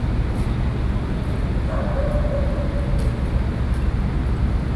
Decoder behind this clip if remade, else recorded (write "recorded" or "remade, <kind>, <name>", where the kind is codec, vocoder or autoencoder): recorded